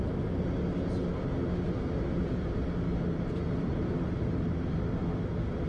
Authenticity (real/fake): real